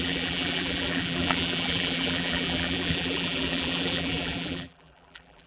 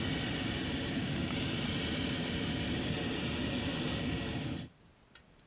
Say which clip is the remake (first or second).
first